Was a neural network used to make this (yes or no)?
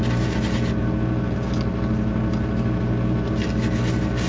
no